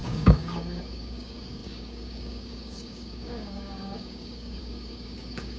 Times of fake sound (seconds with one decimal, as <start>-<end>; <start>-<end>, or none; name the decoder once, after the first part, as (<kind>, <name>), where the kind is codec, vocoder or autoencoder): 0.0-5.6 (codec, DAC)